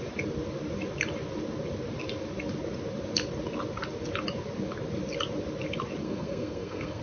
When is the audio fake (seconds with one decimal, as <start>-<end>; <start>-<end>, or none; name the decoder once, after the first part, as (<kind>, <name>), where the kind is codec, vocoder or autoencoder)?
6.0-7.0 (codec, SNAC)